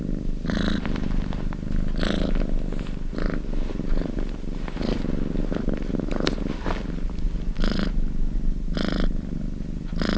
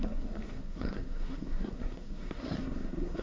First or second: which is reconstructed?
second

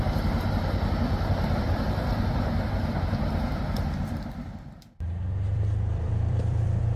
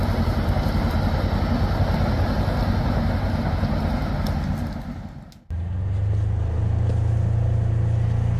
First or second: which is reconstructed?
first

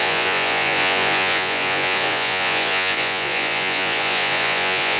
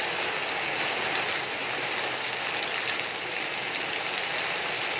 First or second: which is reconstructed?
first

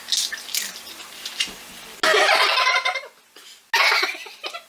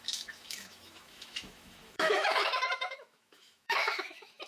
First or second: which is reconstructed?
second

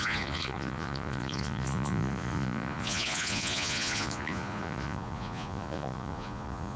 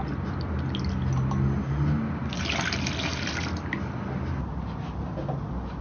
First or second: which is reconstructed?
first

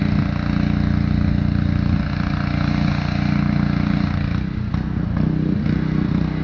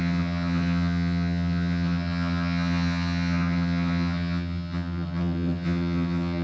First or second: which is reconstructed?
second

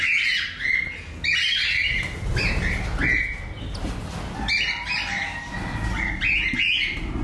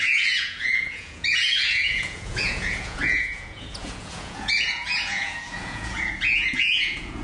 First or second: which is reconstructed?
second